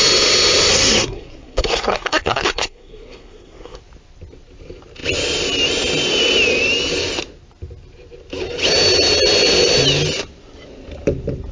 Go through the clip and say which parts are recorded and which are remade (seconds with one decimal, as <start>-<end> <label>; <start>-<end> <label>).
0.0-0.7 recorded; 0.7-3.8 remade; 3.8-11.5 recorded